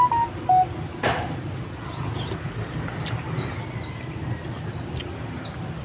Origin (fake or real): real